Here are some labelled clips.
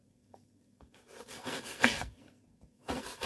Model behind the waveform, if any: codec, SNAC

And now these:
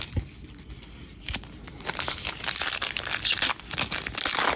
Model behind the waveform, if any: none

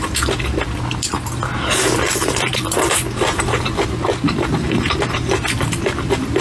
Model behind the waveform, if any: none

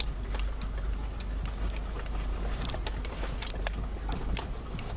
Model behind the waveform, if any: none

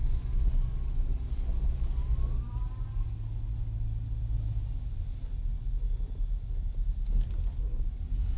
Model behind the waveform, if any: none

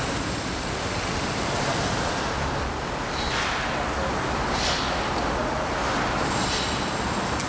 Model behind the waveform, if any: none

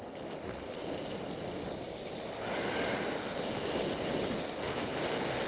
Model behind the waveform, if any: none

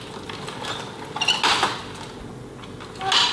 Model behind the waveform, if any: none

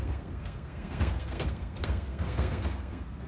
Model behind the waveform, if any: codec, SNAC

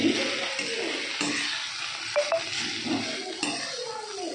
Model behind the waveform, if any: none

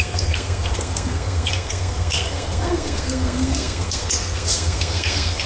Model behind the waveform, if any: codec, SNAC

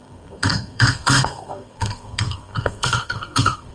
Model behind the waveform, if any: codec, SNAC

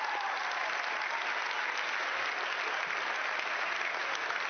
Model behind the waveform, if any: none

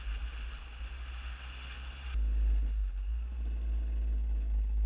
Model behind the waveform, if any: none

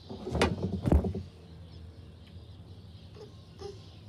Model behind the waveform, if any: none